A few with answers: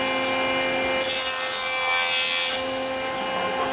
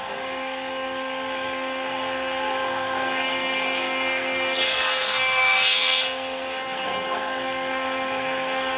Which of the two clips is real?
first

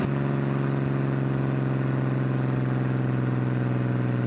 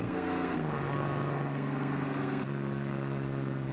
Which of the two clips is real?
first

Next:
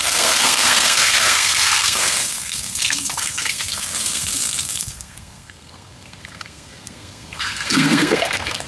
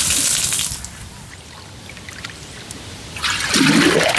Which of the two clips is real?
second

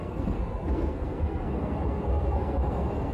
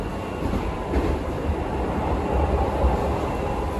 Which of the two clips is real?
second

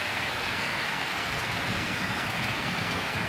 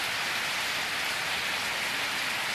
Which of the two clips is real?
second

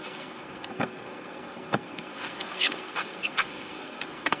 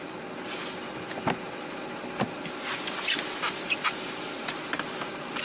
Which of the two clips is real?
second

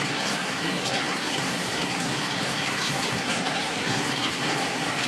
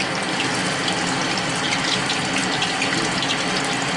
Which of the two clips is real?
second